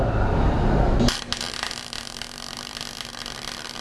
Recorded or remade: recorded